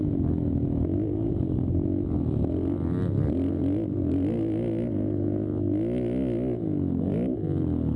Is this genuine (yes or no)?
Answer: yes